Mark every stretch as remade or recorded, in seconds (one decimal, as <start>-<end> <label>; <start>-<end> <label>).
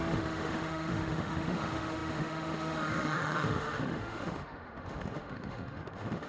0.0-6.3 remade